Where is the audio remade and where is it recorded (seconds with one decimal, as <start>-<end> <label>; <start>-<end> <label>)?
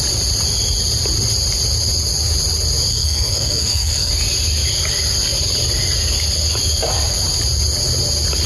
0.0-2.9 recorded; 2.9-4.1 remade; 4.1-8.5 recorded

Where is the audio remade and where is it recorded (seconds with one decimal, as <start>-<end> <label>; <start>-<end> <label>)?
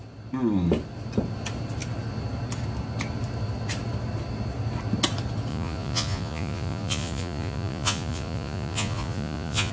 0.0-5.5 recorded; 5.5-9.7 remade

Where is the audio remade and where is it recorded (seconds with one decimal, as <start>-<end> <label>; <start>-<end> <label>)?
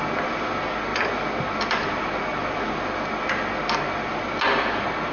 0.0-5.1 recorded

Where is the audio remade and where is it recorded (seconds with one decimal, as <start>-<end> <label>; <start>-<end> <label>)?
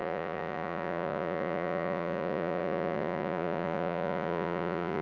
0.0-5.0 remade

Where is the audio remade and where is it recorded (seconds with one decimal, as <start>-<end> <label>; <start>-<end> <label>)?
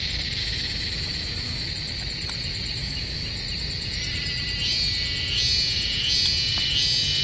0.0-0.4 recorded; 0.4-1.7 remade; 1.7-2.8 recorded; 2.8-3.3 remade; 3.3-7.2 recorded